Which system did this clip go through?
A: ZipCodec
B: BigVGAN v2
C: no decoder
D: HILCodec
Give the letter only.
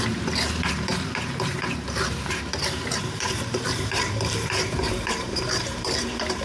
B